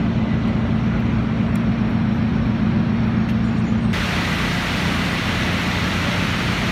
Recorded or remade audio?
recorded